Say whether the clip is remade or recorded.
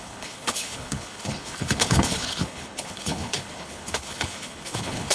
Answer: remade